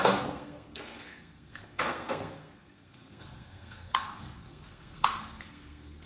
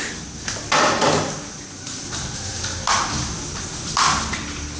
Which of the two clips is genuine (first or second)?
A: second